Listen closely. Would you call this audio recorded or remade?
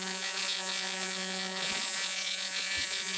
remade